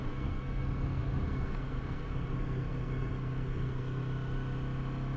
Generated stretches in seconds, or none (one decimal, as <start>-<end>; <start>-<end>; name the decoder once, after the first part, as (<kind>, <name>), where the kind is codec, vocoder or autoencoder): 0.0-4.0 (codec, SNAC)